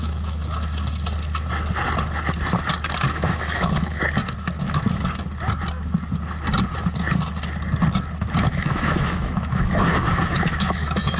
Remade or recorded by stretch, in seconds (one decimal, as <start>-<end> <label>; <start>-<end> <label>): 0.0-0.4 remade; 0.4-3.1 recorded; 3.1-4.0 remade; 4.0-8.5 recorded; 8.5-11.2 remade